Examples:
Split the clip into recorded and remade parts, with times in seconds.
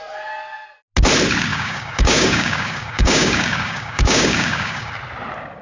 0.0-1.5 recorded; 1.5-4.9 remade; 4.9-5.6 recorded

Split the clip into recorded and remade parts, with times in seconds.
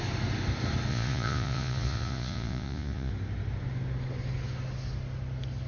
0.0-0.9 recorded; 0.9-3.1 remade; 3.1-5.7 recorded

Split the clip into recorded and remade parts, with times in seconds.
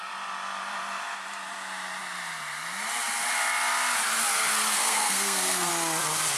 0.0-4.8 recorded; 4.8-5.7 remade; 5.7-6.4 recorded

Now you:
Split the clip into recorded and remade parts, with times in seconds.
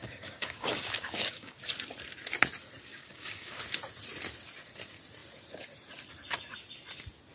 0.0-1.6 remade; 1.6-2.9 recorded; 2.9-3.6 remade; 3.6-7.3 recorded